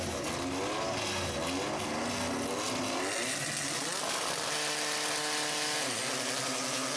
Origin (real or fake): real